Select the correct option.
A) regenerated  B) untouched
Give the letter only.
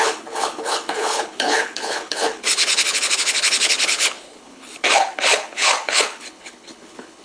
A